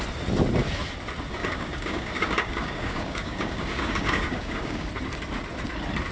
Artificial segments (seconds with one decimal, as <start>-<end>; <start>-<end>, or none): 1.4-4.9